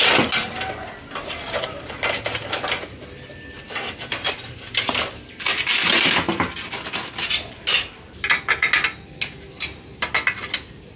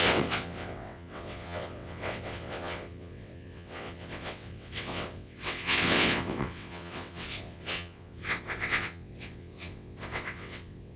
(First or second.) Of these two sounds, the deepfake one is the second